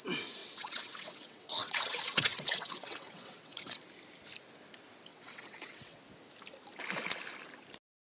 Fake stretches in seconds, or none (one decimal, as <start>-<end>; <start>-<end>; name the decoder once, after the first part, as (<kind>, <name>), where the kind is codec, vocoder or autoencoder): 0.4-3.8 (vocoder, WaveNeXt); 5.1-6.0